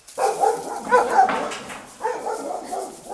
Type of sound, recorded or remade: recorded